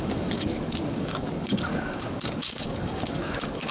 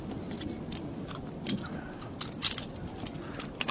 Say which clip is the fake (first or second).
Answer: first